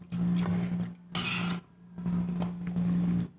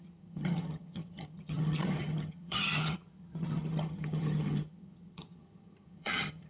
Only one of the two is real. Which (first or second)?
first